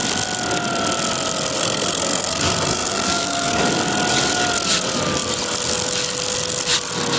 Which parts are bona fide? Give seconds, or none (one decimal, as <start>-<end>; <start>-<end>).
0.0-1.6; 3.6-7.2